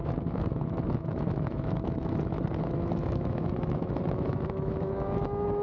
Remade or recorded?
remade